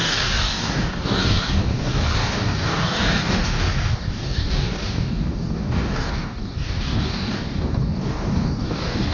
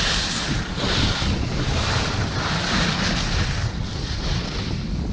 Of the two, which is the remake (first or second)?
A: first